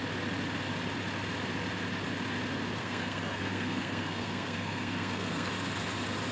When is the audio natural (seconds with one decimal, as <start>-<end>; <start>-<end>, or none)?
0.0-2.8; 5.5-6.3